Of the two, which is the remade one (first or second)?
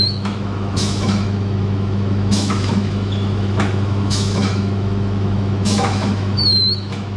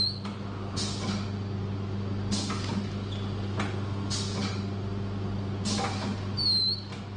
first